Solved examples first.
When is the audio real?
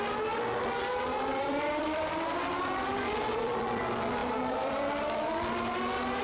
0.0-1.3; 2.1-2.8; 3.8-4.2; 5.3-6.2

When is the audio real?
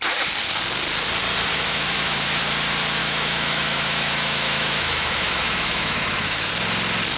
0.0-1.5; 2.4-3.0; 6.5-7.2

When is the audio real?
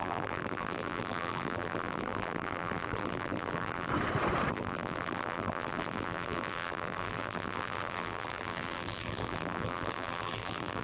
3.9-4.5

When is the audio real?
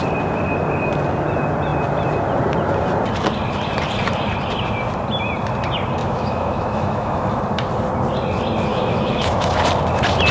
0.0-6.0; 7.4-8.7; 9.6-10.3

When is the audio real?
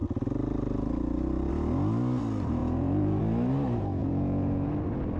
0.0-2.6; 3.2-4.0; 4.7-5.2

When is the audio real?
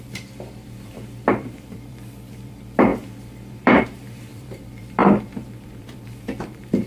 none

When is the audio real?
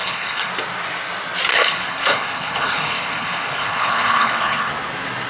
0.5-1.5; 4.7-5.3